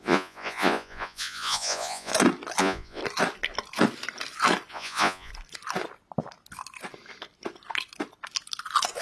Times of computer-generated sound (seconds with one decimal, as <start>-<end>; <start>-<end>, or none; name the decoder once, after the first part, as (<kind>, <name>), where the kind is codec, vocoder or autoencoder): 0.0-2.1 (vocoder, Vocos); 2.6-3.0; 4.7-5.3